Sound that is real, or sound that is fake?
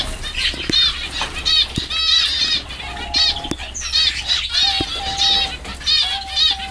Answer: real